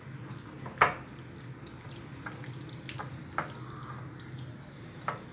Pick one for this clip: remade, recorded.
recorded